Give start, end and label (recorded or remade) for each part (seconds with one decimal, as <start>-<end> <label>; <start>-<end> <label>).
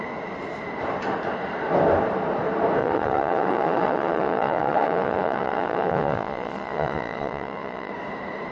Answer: 0.0-2.8 recorded; 2.8-7.9 remade; 7.9-8.5 recorded